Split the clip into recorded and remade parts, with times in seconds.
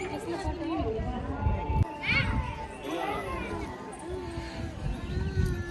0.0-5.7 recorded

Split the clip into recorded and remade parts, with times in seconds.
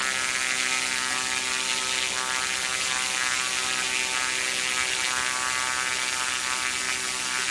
0.0-7.5 recorded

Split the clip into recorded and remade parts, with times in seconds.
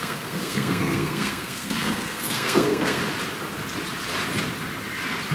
0.0-3.0 remade; 3.0-5.3 recorded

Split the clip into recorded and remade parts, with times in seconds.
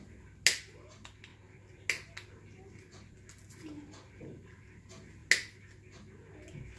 0.0-6.8 recorded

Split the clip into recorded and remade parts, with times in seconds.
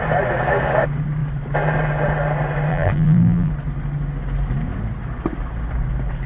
0.0-2.7 recorded; 2.7-3.5 remade; 3.5-6.3 recorded